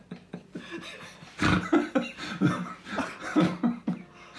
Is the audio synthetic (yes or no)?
no